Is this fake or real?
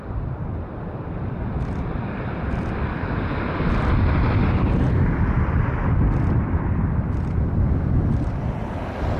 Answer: real